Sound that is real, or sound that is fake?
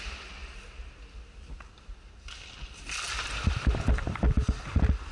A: real